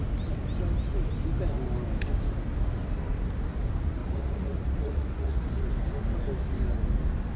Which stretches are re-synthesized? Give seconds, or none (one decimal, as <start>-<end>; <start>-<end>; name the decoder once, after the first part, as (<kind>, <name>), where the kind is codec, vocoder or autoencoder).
4.0-5.6 (vocoder, Vocos)

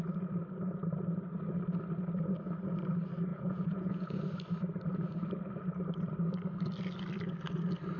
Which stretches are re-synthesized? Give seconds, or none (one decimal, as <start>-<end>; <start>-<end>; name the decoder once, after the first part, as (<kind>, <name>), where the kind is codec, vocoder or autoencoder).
3.3-4.2 (vocoder, Vocos)

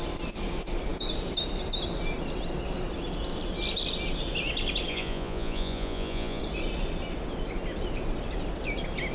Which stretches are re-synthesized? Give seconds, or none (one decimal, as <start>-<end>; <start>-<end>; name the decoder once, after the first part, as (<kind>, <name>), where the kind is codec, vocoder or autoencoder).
4.9-6.4 (vocoder, Vocos)